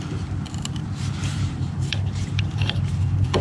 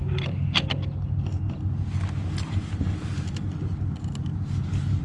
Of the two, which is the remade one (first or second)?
first